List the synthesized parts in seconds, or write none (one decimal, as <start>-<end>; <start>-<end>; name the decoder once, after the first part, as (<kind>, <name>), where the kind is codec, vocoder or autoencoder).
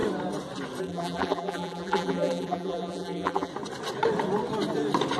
0.8-3.5 (vocoder, BigVGAN v2)